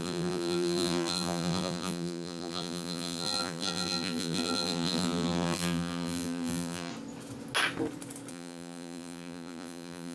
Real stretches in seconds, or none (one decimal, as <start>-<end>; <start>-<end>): 6.9-8.3